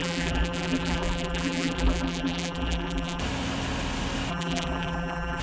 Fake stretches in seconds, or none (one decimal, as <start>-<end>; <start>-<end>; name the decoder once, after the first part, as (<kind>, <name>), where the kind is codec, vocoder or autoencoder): 0.0-3.2 (vocoder, BigVGAN v2); 4.3-5.4